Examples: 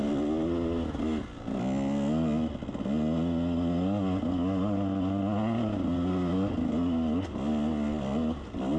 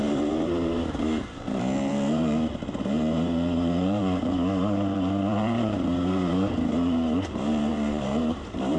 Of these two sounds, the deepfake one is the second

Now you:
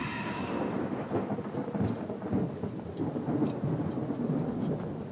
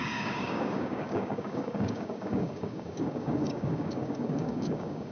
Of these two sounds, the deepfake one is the second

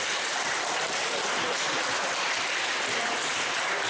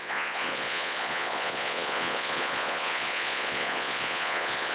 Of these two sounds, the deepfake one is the second